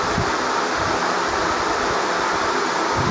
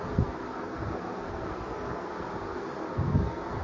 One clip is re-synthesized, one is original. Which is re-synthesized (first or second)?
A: second